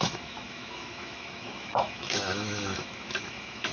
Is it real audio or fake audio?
fake